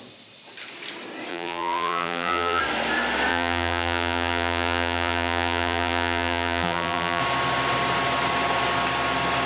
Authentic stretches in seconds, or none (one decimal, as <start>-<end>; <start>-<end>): 0.0-1.3; 2.6-3.3; 7.2-9.5